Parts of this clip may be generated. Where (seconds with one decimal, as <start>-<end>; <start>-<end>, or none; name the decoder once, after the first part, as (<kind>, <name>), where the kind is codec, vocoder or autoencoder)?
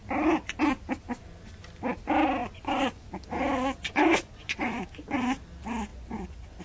2.4-4.8 (vocoder, Vocos); 5.9-6.6